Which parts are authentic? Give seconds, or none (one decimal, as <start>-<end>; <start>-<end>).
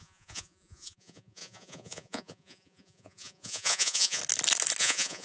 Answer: 4.2-4.8